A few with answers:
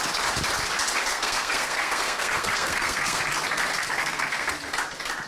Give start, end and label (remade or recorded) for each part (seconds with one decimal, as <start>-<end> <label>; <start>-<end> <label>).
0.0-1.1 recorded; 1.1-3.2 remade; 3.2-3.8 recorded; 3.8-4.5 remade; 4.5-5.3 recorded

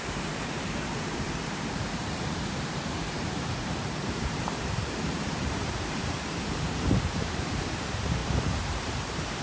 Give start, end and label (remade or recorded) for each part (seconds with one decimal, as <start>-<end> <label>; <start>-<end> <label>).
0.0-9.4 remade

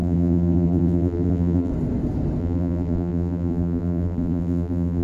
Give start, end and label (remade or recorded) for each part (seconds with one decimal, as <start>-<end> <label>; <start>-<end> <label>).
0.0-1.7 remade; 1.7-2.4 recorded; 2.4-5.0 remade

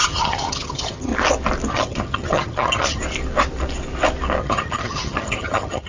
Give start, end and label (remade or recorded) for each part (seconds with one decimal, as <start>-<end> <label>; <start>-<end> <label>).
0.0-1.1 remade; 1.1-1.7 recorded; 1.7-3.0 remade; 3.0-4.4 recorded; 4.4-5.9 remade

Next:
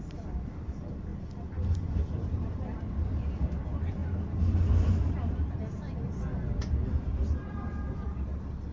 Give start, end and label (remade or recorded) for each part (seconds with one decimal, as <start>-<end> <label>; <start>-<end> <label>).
0.0-1.1 remade; 1.1-2.0 recorded; 2.0-4.0 remade; 4.0-7.5 recorded; 7.5-8.7 remade

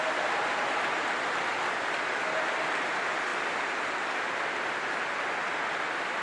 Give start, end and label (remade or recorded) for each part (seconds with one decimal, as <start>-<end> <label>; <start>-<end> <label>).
0.0-6.2 recorded

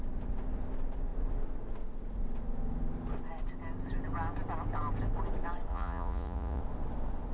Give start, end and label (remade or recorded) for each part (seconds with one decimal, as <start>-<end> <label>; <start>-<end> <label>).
0.0-5.7 recorded; 5.7-6.6 remade; 6.6-7.3 recorded

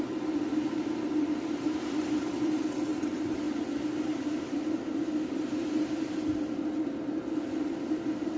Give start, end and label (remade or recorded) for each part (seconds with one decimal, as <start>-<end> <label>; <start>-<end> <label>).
0.0-8.4 recorded